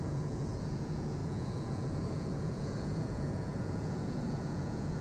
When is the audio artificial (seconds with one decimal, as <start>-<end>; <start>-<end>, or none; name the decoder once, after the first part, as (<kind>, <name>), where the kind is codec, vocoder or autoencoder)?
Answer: 0.0-5.0 (vocoder, Vocos)